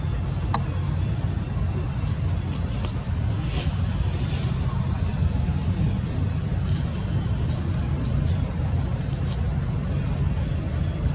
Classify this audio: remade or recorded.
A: recorded